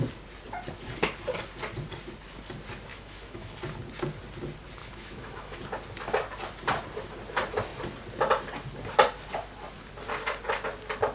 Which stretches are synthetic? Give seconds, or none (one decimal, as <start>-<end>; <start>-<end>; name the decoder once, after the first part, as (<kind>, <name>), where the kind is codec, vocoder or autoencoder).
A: 2.9-3.5 (autoencoder, DAC-VAE); 4.8-5.6